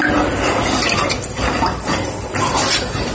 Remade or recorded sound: recorded